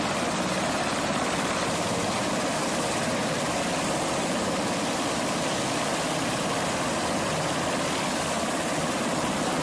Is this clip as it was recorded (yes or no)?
no